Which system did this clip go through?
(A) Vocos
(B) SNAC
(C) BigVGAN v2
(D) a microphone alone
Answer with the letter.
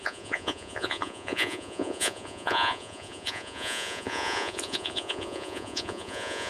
A